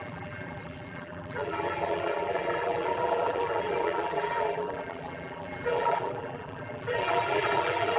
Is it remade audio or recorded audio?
remade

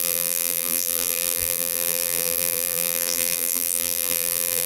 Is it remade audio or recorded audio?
remade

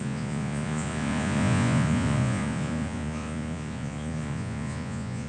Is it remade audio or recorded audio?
remade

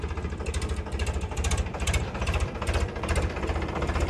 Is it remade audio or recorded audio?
recorded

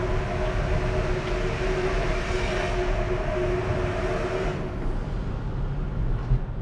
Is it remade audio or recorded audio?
recorded